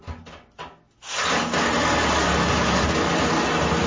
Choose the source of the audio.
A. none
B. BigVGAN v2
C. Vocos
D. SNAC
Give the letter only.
A